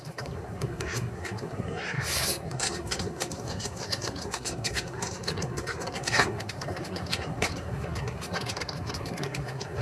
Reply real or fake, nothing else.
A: fake